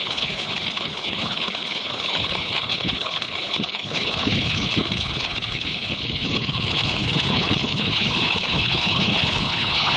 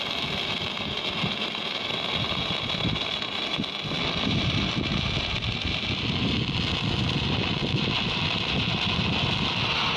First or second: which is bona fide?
second